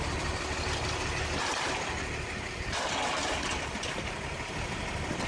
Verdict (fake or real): real